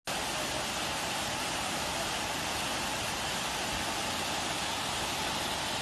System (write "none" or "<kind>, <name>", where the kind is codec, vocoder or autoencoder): none